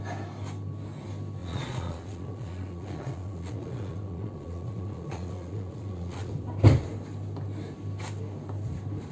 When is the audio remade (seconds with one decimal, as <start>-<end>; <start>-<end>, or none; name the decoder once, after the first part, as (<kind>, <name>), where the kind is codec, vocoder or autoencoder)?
1.4-6.3 (vocoder, Vocos)